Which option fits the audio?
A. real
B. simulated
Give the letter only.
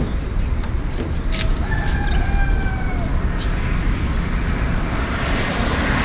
A